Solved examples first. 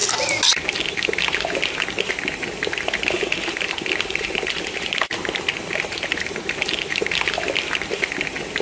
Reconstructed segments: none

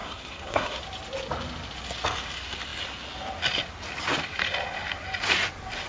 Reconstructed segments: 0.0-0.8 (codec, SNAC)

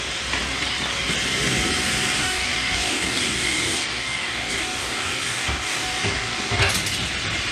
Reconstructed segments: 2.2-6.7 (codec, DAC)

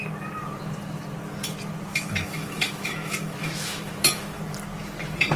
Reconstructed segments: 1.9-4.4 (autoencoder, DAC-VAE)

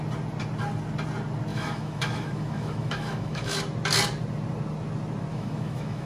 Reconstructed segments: 1.5-3.6 (autoencoder, DAC-VAE); 5.3-6.1